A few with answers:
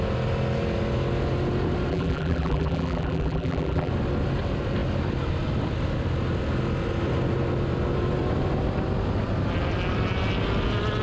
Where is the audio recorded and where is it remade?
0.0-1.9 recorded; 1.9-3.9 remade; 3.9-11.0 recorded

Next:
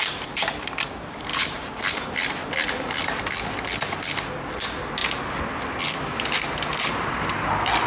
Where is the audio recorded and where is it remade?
0.0-1.3 recorded; 1.3-2.0 remade; 2.0-7.9 recorded

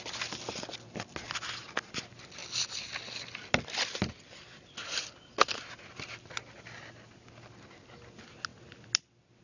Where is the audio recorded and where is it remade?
0.0-9.4 recorded

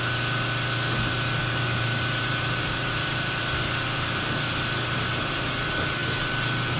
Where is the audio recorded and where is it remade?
0.0-1.4 recorded; 1.4-3.4 remade; 3.4-6.8 recorded

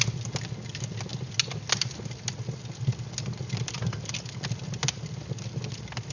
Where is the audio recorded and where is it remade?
0.0-6.1 recorded